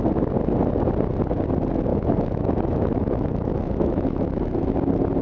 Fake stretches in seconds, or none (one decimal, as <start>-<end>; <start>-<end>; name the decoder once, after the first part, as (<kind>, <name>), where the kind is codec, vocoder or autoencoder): 1.9-4.6 (autoencoder, DAC-VAE)